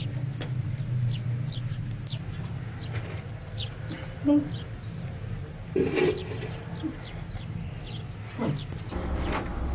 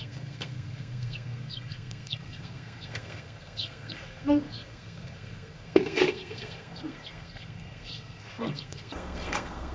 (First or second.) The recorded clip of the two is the first